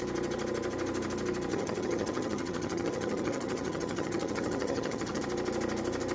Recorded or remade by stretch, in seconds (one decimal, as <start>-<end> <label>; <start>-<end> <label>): 0.0-1.5 recorded; 1.5-5.2 remade; 5.2-6.1 recorded